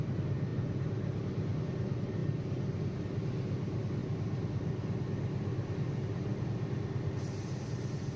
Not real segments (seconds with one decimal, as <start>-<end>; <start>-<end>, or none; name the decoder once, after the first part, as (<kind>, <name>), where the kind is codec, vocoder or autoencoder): none